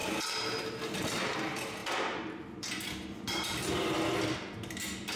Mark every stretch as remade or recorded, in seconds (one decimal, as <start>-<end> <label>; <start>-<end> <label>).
0.0-1.0 remade; 1.0-1.8 recorded; 1.8-3.6 remade; 3.6-5.2 recorded